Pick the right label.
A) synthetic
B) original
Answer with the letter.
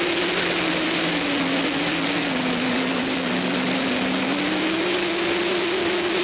B